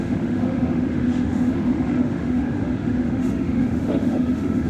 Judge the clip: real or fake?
fake